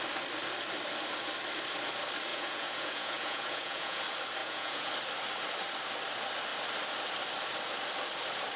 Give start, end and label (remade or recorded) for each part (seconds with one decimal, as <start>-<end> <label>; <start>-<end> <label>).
0.0-2.3 recorded; 2.3-4.0 remade; 4.0-4.4 recorded; 4.4-4.9 remade; 4.9-8.6 recorded